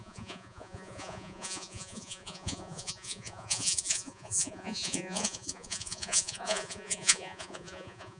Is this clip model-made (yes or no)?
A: yes